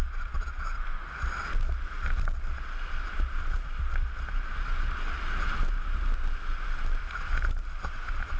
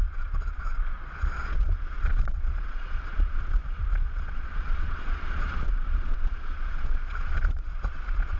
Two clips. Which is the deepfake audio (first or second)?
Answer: second